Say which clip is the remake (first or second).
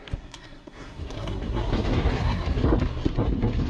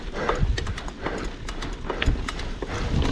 first